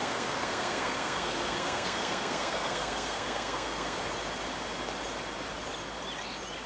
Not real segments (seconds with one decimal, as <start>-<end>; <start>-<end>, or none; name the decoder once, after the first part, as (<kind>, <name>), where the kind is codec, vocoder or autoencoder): 0.0-4.0 (codec, SNAC)